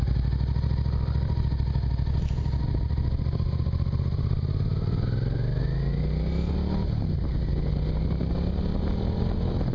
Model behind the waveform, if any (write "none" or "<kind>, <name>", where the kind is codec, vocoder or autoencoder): none